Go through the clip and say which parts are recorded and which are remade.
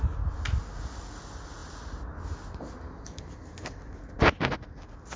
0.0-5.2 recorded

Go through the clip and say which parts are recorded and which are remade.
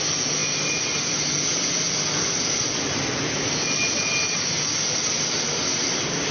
0.0-6.3 recorded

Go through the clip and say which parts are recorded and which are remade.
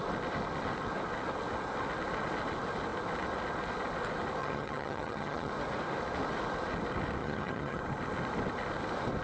0.0-4.4 recorded; 4.4-5.5 remade; 5.5-7.2 recorded; 7.2-7.8 remade; 7.8-9.2 recorded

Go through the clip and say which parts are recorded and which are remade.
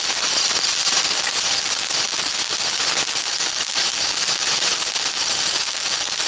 0.0-4.2 recorded; 4.2-4.7 remade; 4.7-6.3 recorded